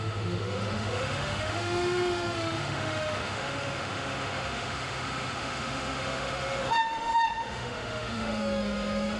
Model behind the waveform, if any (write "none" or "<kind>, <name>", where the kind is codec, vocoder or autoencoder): autoencoder, DAC-VAE